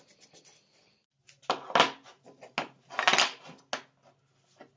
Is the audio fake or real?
real